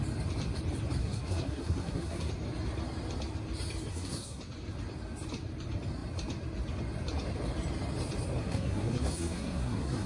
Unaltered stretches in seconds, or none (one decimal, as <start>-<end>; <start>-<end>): 0.0-1.0; 2.3-3.9; 4.4-8.4